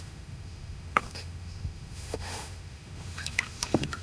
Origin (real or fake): fake